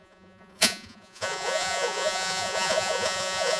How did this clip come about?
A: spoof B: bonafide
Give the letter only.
A